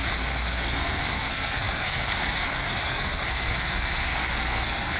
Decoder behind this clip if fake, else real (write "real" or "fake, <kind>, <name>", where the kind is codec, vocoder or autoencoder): fake, codec, SNAC